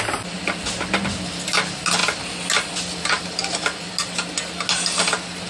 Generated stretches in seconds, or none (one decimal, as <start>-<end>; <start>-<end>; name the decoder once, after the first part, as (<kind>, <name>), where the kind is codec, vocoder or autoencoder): 3.4-3.9 (vocoder, BigVGAN v2)